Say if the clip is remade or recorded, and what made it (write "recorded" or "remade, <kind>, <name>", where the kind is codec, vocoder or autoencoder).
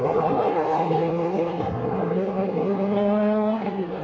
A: remade, codec, SNAC